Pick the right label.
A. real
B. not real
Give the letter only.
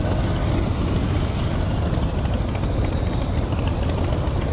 A